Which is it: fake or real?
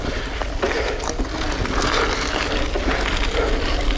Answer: real